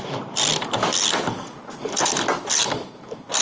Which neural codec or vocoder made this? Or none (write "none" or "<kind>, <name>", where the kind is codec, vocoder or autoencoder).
none